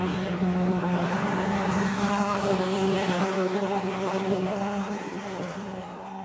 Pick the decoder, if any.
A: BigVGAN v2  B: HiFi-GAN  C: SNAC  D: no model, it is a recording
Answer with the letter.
C